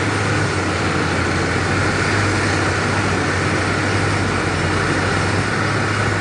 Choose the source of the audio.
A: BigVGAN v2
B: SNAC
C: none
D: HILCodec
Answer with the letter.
C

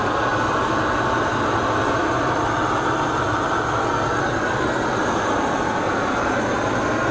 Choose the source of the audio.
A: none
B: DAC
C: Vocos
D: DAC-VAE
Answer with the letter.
A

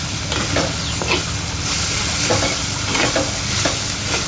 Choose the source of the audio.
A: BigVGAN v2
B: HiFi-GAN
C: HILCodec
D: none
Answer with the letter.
D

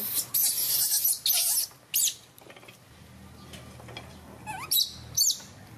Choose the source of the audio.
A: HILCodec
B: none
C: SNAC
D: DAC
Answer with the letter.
B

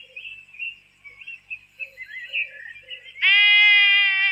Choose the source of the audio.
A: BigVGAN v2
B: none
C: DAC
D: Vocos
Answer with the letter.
B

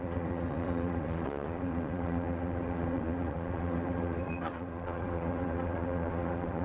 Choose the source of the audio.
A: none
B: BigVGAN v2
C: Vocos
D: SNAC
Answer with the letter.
C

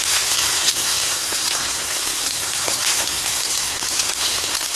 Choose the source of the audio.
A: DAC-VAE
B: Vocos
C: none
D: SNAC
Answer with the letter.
D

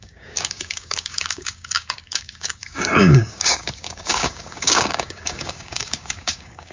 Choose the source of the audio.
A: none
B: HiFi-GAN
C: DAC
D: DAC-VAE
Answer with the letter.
C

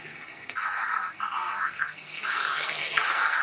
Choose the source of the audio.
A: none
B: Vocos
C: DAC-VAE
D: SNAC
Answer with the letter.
D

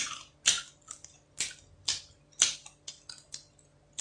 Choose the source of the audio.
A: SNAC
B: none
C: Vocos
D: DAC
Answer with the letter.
B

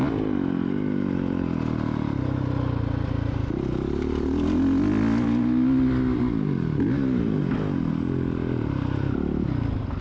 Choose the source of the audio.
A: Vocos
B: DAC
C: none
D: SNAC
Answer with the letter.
C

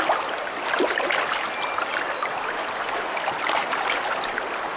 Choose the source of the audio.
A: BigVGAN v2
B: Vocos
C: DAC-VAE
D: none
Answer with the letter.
D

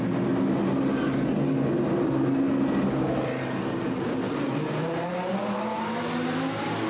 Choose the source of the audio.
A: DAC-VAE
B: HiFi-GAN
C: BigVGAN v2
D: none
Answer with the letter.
D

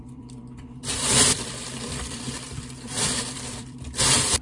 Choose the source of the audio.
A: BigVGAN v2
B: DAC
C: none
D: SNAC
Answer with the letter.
A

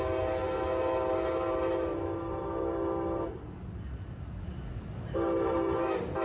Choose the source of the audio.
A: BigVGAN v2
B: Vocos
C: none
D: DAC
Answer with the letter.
C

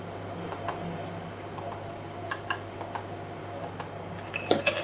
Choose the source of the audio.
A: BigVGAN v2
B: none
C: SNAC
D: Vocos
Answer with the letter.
B